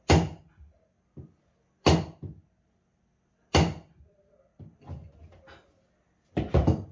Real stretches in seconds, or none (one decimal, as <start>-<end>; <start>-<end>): 0.0-6.9